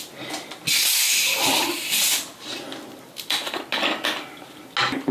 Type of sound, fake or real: real